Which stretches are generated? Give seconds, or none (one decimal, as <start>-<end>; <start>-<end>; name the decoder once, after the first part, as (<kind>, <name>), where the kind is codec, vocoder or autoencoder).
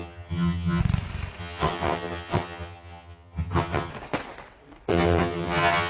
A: 0.0-0.8 (vocoder, HiFi-GAN); 1.4-3.9; 4.9-5.9